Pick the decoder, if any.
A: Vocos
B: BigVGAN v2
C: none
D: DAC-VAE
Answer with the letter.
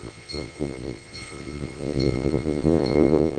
A